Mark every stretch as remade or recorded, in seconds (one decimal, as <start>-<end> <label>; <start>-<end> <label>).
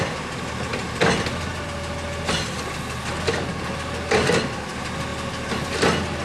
0.0-6.2 recorded